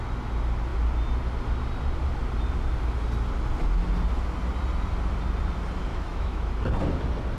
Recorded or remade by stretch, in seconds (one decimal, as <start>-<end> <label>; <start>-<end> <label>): 0.0-5.9 recorded; 5.9-6.5 remade; 6.5-7.4 recorded